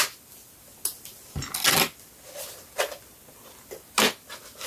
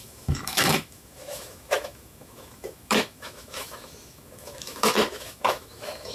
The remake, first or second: second